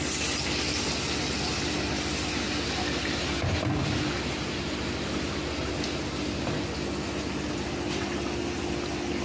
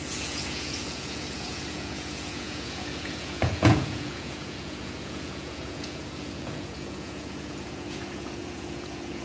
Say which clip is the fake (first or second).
second